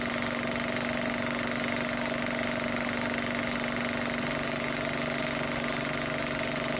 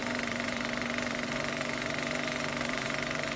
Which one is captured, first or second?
first